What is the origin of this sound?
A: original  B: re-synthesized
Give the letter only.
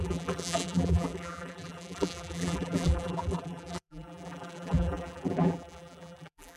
B